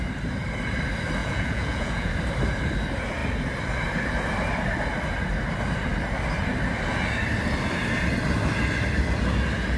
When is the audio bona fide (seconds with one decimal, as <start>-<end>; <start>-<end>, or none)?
0.0-1.2; 2.1-9.8